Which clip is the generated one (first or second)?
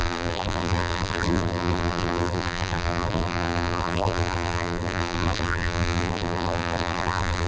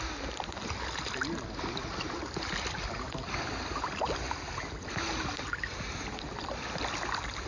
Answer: first